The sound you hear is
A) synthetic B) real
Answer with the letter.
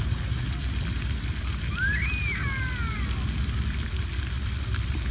B